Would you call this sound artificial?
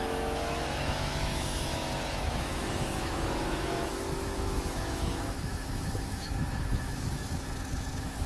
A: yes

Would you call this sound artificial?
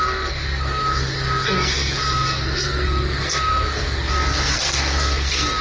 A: yes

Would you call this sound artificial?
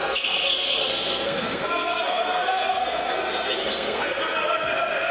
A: yes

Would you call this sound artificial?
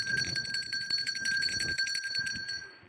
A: yes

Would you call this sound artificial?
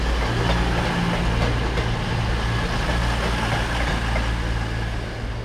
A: no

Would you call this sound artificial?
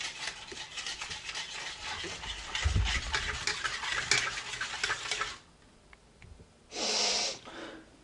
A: no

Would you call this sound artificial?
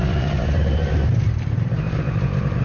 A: yes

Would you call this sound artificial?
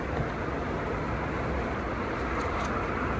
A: no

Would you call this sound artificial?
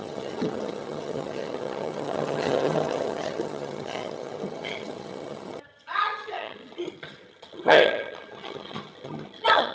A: yes